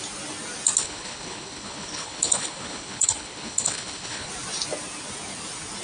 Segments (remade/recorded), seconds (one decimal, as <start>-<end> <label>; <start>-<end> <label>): 0.0-0.8 recorded; 0.8-4.3 remade; 4.3-5.8 recorded